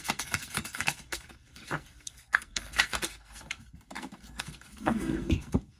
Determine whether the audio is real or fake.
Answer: fake